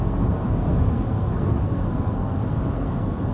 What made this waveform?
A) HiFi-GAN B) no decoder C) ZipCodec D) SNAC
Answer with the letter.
D